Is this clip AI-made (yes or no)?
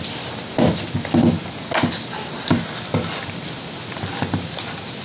no